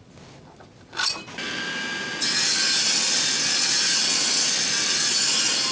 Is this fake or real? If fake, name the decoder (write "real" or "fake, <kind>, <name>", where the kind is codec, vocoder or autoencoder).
real